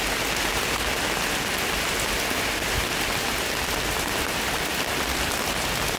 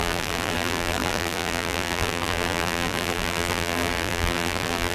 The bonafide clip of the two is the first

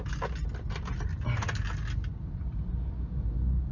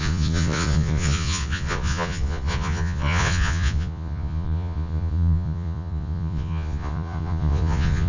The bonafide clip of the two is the first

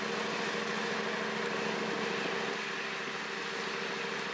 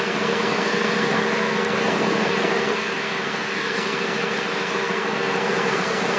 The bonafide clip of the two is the first